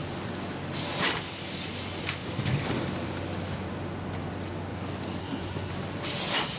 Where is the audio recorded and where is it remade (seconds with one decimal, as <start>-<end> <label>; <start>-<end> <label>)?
0.0-5.2 recorded; 5.2-5.7 remade; 5.7-6.6 recorded